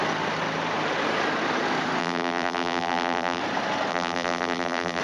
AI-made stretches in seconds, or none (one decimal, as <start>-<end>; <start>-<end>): 2.0-3.4; 3.9-5.0